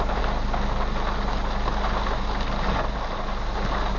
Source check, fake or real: real